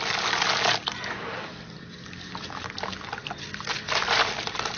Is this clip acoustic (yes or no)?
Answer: yes